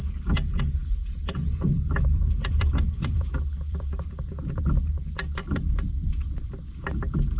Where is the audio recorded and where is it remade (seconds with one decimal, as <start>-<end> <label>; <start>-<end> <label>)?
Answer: 0.0-0.8 recorded; 0.8-4.6 remade; 4.6-5.4 recorded; 5.4-6.5 remade; 6.5-7.4 recorded

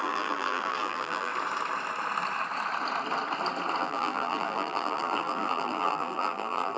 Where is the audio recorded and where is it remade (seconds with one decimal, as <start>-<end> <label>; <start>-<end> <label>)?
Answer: 0.0-1.3 remade; 1.3-3.8 recorded; 3.8-6.8 remade

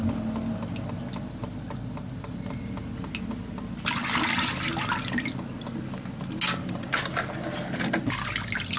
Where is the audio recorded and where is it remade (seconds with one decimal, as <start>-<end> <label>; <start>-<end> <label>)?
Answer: 0.0-8.8 recorded

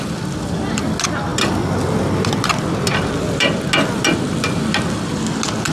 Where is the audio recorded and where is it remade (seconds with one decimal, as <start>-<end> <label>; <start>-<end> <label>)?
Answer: 0.0-5.7 recorded

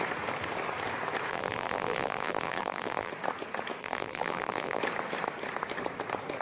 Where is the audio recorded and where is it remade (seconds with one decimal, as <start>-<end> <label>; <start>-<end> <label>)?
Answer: 0.0-1.3 recorded; 1.3-3.1 remade; 3.1-3.8 recorded; 3.8-4.8 remade; 4.8-6.4 recorded

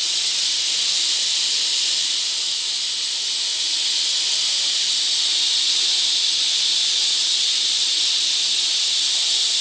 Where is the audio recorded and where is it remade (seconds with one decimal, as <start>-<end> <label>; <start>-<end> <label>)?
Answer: 0.0-0.5 recorded; 0.5-2.1 remade; 2.1-9.6 recorded

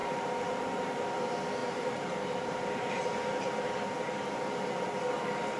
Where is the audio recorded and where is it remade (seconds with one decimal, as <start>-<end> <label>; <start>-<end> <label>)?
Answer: 0.0-1.1 remade; 1.1-1.6 recorded; 1.6-5.0 remade; 5.0-5.6 recorded